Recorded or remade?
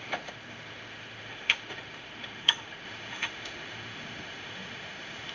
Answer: remade